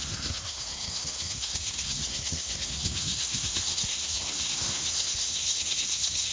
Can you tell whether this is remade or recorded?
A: remade